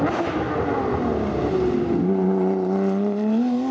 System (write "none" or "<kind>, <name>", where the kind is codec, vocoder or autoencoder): none